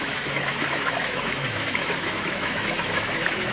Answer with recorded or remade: remade